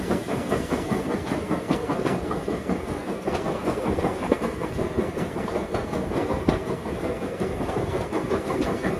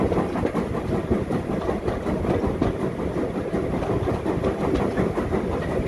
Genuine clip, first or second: second